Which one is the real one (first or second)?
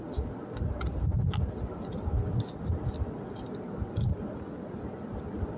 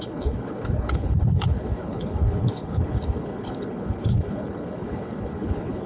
first